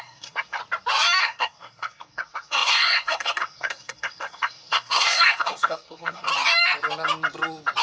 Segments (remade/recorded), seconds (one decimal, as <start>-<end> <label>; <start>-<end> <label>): 0.0-0.6 remade; 0.6-1.2 recorded; 1.2-6.3 remade; 6.3-7.8 recorded